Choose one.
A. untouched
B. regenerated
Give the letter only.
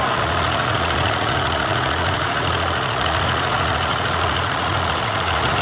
B